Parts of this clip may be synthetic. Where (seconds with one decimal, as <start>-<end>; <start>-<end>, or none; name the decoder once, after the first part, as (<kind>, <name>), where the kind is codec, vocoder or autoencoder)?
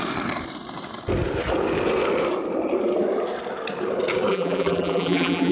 4.3-5.5 (vocoder, BigVGAN v2)